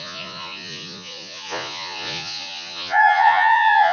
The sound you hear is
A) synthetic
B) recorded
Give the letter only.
A